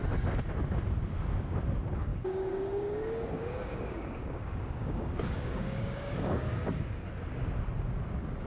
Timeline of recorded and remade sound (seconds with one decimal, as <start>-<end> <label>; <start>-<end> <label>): 0.0-2.1 recorded; 2.1-7.0 remade; 7.0-8.5 recorded